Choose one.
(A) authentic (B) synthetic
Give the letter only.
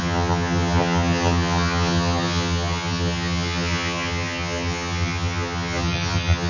B